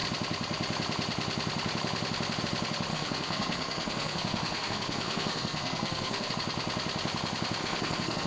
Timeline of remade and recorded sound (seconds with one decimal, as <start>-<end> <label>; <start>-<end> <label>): 0.0-2.9 recorded; 2.9-6.3 remade; 6.3-7.6 recorded; 7.6-8.3 remade